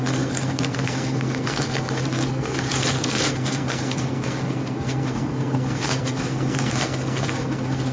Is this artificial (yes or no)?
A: yes